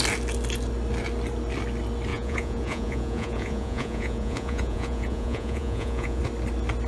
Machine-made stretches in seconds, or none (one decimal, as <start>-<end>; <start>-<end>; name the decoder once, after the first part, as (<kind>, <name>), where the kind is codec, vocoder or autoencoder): 2.1-6.2 (vocoder, Vocos)